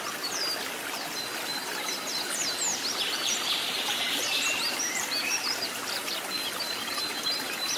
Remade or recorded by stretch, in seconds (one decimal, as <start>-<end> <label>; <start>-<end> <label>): 0.0-2.7 recorded; 2.7-6.2 remade; 6.2-7.8 recorded